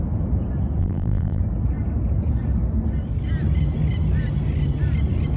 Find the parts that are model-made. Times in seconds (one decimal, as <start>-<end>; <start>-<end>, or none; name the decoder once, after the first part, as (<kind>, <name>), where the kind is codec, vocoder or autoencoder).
0.8-1.4 (vocoder, BigVGAN v2)